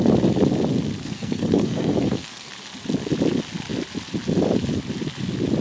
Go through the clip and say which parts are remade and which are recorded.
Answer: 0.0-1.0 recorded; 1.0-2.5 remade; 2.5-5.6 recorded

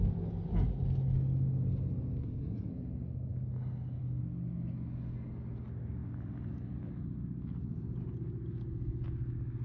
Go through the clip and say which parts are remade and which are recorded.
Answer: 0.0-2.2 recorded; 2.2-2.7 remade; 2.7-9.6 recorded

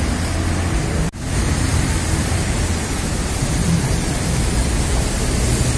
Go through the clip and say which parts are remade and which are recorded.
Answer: 0.0-1.7 recorded; 1.7-5.0 remade; 5.0-5.8 recorded

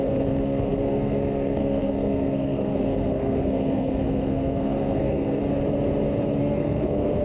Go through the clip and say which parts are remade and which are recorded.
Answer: 0.0-5.4 remade; 5.4-6.4 recorded; 6.4-7.2 remade

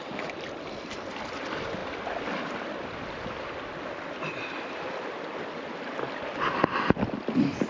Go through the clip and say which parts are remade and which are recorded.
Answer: 0.0-7.7 recorded